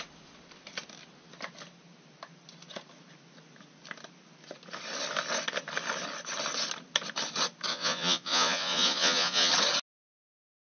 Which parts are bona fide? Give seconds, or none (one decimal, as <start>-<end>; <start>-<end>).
0.0-7.7; 9.5-10.7